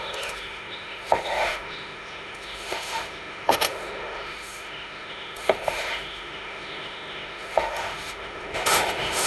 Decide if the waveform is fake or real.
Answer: fake